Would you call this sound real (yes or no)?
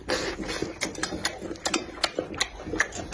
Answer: yes